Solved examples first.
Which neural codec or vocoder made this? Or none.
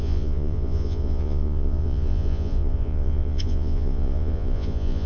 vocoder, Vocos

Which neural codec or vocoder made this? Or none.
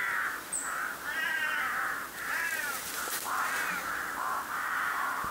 vocoder, BigVGAN v2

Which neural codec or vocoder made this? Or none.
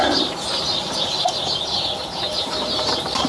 vocoder, BigVGAN v2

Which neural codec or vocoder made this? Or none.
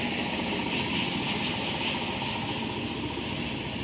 none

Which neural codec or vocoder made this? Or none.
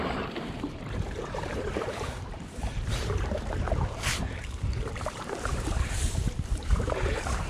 vocoder, BigVGAN v2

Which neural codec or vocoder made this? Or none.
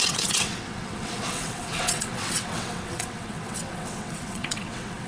vocoder, WaveNeXt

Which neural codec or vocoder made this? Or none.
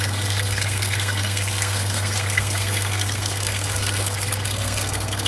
codec, SNAC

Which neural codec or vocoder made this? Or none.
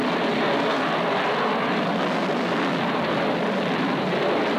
none